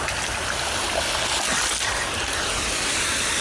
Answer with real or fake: real